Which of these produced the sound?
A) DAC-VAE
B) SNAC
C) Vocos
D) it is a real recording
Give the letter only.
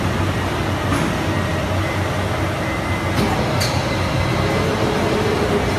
D